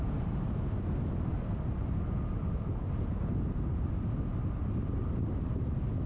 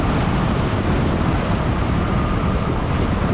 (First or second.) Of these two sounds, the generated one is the second